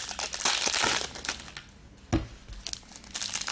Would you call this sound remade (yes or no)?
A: no